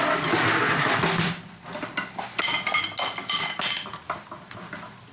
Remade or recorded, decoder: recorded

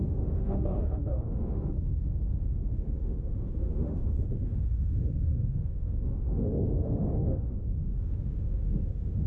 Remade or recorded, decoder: remade, autoencoder, DAC-VAE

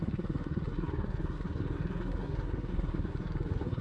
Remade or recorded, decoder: remade, codec, SNAC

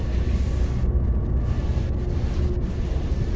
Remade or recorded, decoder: recorded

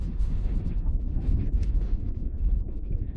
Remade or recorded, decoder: remade, autoencoder, DAC-VAE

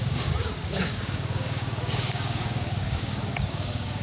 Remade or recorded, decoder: remade, codec, DAC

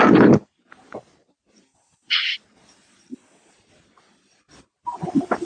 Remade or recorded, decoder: recorded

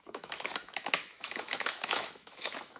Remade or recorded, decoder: remade, autoencoder, DAC-VAE